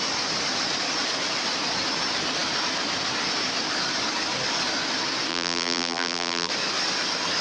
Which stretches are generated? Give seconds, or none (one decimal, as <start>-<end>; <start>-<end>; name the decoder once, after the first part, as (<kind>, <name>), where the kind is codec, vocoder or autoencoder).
5.3-6.5 (vocoder, BigVGAN v2)